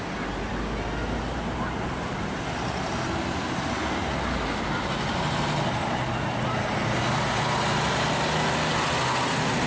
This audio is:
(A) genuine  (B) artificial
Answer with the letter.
A